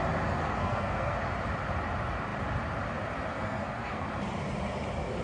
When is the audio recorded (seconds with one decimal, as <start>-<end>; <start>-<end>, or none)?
0.0-0.4; 1.2-3.3; 4.1-5.2